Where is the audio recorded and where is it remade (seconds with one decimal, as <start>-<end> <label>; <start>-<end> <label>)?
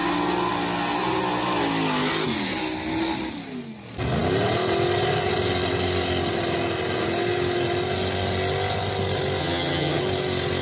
0.0-9.4 recorded; 9.4-10.0 remade; 10.0-10.6 recorded